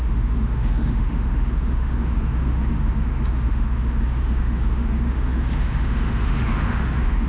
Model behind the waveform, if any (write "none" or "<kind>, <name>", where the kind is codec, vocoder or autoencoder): autoencoder, DAC-VAE